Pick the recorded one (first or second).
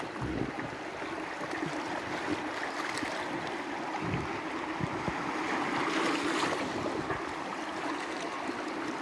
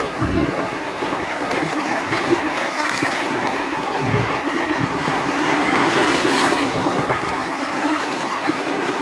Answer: first